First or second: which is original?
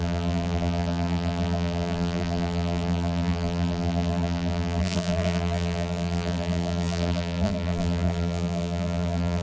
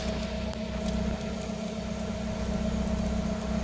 second